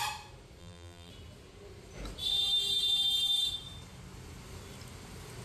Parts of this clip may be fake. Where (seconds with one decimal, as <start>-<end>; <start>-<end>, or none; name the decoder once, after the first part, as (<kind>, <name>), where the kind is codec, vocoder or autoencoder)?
0.6-1.1 (vocoder, BigVGAN v2)